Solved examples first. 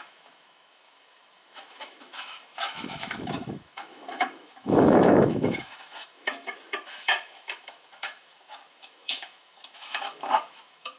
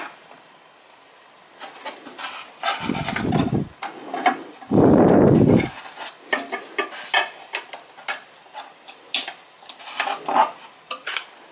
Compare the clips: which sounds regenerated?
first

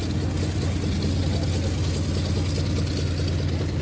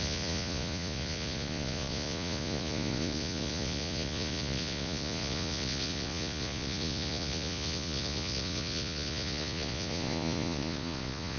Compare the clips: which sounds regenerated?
second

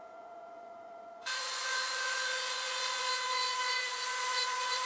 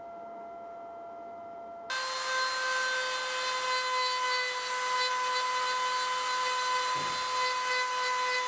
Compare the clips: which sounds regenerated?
first